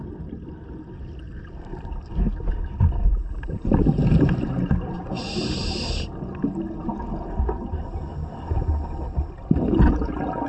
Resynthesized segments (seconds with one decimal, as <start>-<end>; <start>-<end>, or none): none